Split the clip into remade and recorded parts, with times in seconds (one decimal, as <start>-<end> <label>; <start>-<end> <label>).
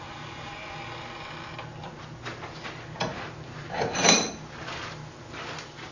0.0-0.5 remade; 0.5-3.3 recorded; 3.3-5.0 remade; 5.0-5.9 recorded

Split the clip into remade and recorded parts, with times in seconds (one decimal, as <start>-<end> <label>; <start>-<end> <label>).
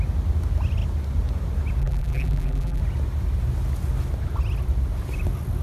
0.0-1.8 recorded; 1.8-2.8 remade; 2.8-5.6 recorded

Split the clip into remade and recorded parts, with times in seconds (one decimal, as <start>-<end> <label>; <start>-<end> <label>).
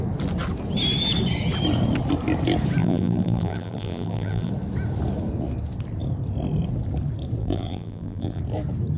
0.0-2.8 recorded; 2.8-4.5 remade; 4.5-7.4 recorded; 7.4-8.4 remade; 8.4-9.0 recorded